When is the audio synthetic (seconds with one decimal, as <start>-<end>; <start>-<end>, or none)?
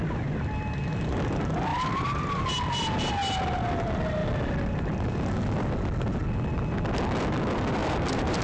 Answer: 1.7-2.4; 7.8-8.4